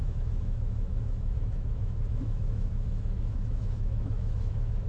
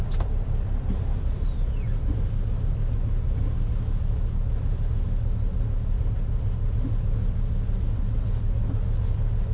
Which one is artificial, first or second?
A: first